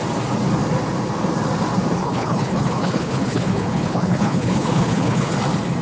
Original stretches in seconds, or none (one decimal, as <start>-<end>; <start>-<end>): 0.0-2.0; 5.3-5.8